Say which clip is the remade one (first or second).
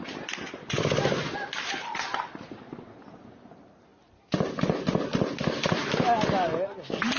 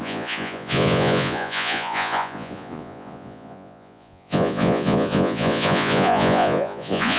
second